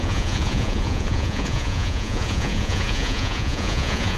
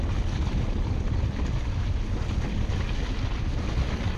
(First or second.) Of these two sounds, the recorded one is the second